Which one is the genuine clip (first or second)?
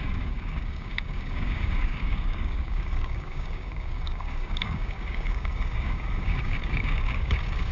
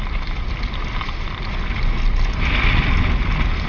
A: second